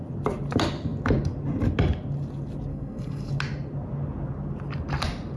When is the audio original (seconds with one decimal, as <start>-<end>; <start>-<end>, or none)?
0.0-2.7; 3.3-5.4